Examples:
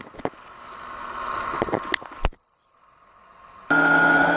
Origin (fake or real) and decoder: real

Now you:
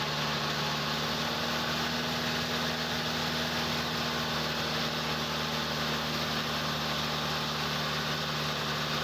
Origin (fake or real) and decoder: real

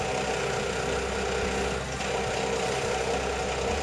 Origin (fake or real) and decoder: real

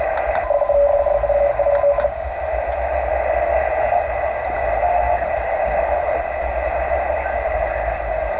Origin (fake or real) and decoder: real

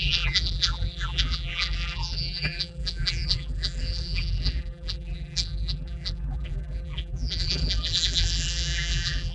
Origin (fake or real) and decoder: fake, vocoder, BigVGAN v2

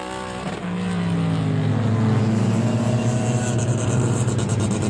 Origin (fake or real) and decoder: real